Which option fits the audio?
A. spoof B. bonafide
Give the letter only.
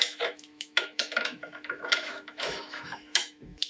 A